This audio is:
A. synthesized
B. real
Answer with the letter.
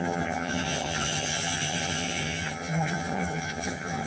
A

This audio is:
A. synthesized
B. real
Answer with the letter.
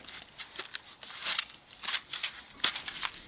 B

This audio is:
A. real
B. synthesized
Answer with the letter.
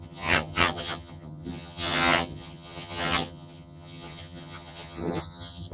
B